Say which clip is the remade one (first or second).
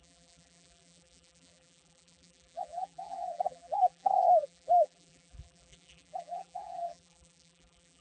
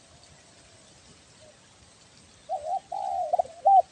first